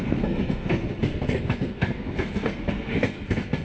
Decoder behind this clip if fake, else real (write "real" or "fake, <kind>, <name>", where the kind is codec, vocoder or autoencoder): fake, codec, SNAC